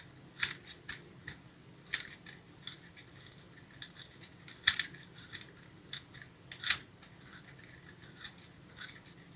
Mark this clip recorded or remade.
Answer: recorded